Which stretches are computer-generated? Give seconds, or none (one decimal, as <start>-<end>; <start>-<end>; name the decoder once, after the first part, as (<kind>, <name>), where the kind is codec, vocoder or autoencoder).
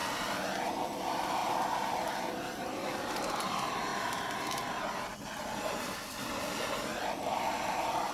0.7-1.4 (vocoder, BigVGAN v2); 3.4-8.1